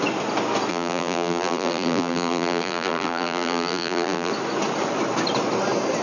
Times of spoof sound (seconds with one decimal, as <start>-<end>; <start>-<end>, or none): 0.7-4.3